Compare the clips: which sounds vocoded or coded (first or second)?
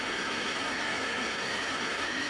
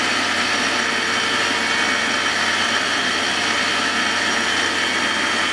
first